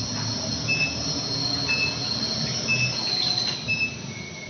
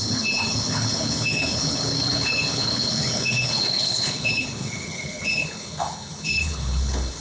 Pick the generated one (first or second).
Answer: second